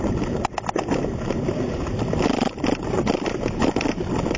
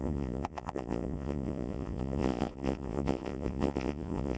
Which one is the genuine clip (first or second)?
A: first